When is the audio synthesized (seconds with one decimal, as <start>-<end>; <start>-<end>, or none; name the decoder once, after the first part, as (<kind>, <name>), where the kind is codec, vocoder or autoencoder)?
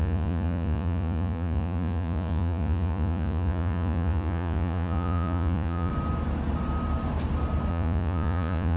0.0-5.9 (vocoder, Vocos); 7.7-8.8